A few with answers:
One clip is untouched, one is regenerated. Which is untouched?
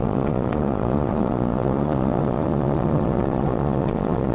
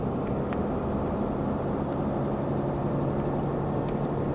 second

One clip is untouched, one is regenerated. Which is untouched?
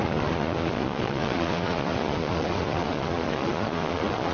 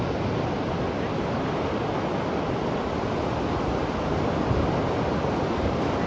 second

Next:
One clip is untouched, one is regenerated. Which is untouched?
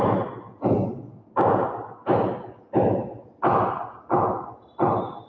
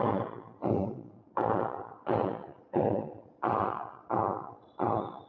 first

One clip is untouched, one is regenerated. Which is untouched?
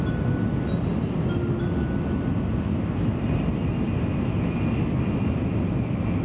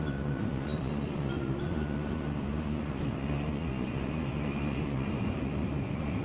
first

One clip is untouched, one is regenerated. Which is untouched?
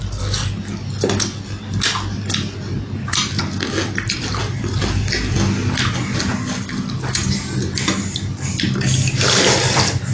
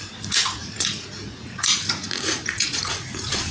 first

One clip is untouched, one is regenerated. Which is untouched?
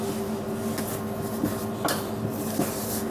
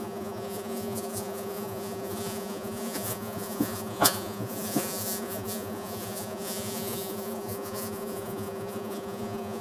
first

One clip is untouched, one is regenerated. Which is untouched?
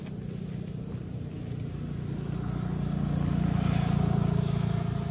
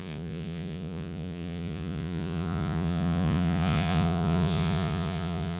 first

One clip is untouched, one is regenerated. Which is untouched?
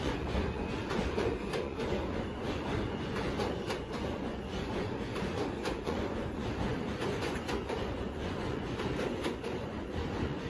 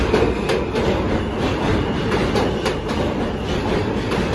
second